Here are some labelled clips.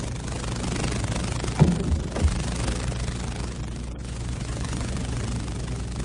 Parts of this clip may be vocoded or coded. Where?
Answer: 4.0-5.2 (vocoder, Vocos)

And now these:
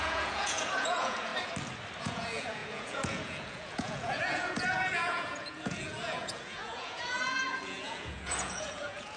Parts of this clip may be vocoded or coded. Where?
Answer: 0.0-1.3 (vocoder, Vocos); 2.0-9.2

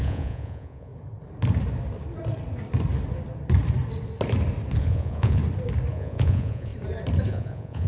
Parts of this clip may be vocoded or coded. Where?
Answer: 0.0-0.9 (vocoder, Vocos); 4.8-5.4; 5.9-6.7; 7.3-7.9

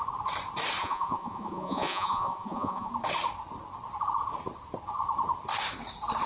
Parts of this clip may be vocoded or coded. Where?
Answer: 0.8-2.9 (vocoder, Vocos)

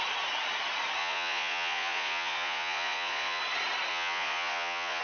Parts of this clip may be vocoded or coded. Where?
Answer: 1.0-3.4 (vocoder, Vocos); 3.9-5.0

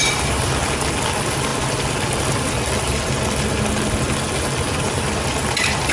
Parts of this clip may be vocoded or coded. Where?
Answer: none

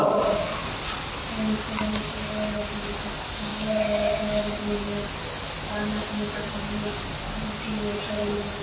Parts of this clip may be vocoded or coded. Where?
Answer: none

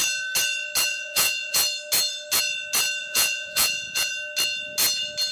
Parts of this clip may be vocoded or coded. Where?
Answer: 0.9-1.6 (vocoder, Vocos); 3.0-4.1